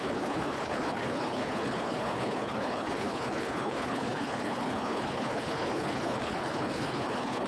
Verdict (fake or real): fake